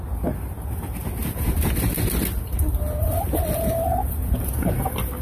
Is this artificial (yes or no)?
no